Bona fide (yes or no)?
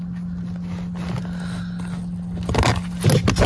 yes